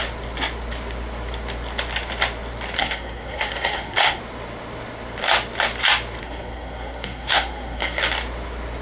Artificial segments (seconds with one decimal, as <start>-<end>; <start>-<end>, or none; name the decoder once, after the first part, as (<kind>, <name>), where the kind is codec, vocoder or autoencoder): 2.8-4.2 (codec, SNAC); 6.2-8.0